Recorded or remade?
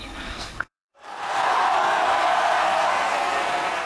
remade